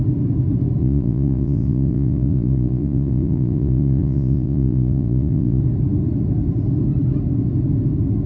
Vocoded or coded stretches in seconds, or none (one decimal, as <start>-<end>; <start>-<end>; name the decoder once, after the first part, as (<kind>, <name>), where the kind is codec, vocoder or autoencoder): 0.8-5.6 (vocoder, Vocos)